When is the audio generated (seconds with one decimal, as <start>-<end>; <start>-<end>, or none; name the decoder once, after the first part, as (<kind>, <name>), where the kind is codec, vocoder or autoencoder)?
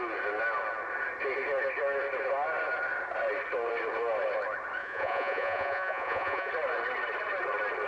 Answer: 4.8-6.5 (vocoder, Vocos)